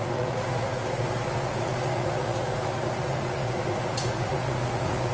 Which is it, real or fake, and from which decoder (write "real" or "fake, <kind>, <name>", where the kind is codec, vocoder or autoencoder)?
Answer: fake, vocoder, Vocos